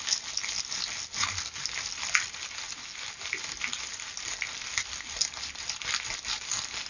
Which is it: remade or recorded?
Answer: recorded